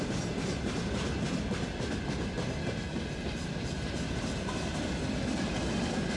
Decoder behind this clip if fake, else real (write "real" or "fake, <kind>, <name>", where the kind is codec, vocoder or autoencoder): real